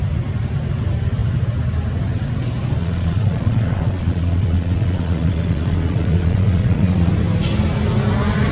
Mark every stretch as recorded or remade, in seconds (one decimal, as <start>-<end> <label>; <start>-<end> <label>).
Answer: 0.0-2.8 recorded; 2.8-7.1 remade; 7.1-8.5 recorded